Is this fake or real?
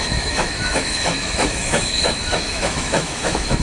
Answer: fake